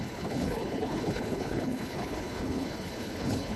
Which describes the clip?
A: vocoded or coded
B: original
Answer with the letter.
A